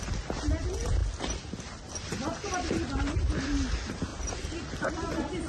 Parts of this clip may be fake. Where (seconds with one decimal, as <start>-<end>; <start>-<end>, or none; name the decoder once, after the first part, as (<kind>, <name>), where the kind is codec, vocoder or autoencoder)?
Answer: none